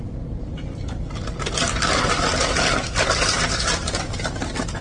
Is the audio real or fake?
real